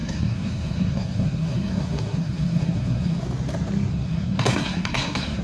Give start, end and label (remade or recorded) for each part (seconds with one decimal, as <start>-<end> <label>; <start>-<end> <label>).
0.0-3.2 remade; 3.2-3.9 recorded; 3.9-5.4 remade